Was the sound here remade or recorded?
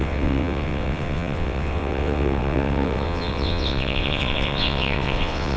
remade